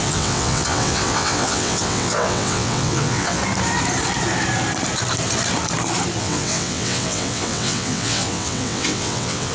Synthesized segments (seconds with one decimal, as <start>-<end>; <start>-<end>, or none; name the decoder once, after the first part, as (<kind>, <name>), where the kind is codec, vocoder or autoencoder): 0.0-3.4 (vocoder, WaveNeXt); 6.2-9.5